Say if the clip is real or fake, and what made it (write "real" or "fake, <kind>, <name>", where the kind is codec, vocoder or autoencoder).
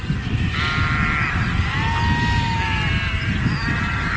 real